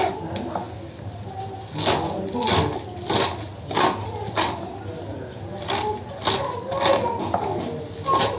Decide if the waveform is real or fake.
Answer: real